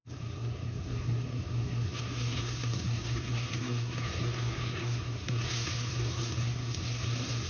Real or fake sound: fake